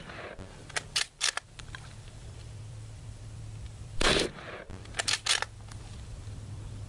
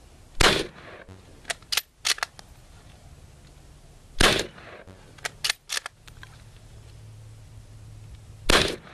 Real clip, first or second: second